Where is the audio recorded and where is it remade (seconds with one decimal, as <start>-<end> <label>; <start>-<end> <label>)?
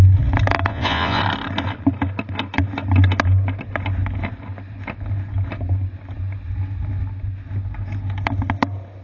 0.0-0.7 recorded; 0.7-1.2 remade; 1.2-9.0 recorded